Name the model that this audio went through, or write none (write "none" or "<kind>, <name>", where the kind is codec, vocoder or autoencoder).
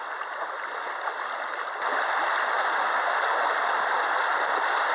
none